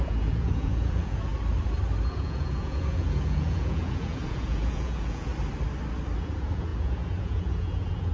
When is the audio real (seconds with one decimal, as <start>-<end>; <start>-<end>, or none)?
1.3-2.1; 5.3-6.2